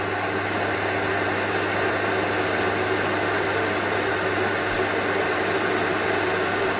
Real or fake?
real